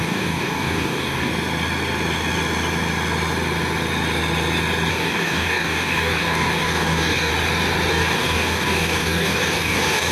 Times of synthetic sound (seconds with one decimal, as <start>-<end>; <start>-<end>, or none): 0.0-1.3; 4.9-7.3; 7.9-10.1